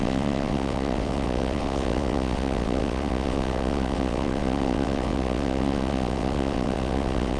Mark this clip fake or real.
fake